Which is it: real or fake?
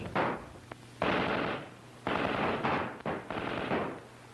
real